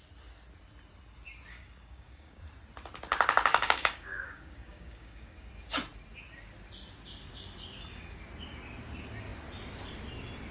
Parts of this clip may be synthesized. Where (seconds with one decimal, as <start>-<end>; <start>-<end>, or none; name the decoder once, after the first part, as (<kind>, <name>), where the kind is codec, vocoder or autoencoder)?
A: 1.5-2.4 (codec, DAC); 3.5-5.5